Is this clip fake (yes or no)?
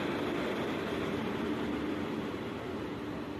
yes